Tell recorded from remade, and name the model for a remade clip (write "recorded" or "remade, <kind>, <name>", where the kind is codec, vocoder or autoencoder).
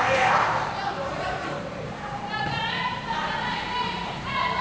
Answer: remade, vocoder, BigVGAN v2